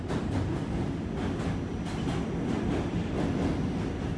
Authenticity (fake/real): real